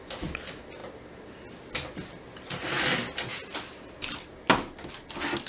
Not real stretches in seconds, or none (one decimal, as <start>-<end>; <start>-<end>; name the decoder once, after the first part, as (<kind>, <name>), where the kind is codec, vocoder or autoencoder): none